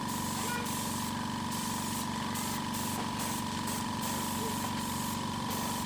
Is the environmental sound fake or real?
real